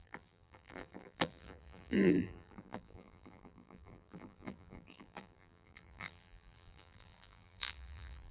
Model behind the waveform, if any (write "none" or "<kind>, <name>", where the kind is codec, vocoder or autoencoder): vocoder, BigVGAN v2